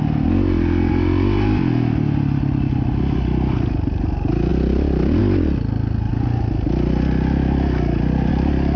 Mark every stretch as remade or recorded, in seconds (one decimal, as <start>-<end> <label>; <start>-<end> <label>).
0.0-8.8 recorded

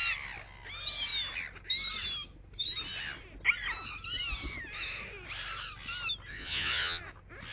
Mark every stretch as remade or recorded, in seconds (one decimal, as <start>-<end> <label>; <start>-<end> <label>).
0.0-6.3 recorded; 6.3-7.0 remade; 7.0-7.5 recorded

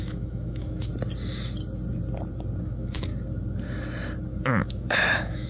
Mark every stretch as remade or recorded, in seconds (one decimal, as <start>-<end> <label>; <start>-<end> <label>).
0.0-0.9 remade; 0.9-2.6 recorded; 2.6-3.1 remade; 3.1-4.4 recorded; 4.4-5.5 remade